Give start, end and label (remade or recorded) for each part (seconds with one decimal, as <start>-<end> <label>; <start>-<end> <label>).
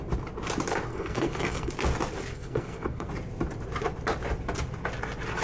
0.0-0.9 recorded; 0.9-1.7 remade; 1.7-2.3 recorded; 2.3-3.1 remade; 3.1-5.4 recorded